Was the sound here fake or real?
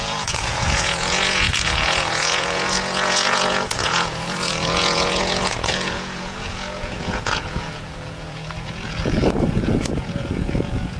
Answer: fake